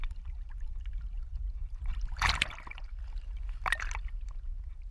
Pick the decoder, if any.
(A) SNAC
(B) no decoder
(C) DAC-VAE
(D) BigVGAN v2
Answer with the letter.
B